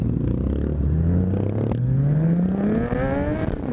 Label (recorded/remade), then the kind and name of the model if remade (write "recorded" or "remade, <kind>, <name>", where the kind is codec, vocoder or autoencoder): recorded